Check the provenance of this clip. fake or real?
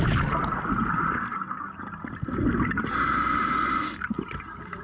real